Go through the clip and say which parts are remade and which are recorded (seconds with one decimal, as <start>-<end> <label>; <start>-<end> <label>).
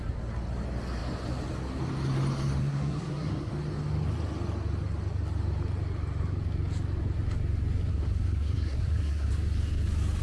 0.0-2.6 recorded; 2.6-3.5 remade; 3.5-7.9 recorded; 7.9-9.3 remade; 9.3-10.2 recorded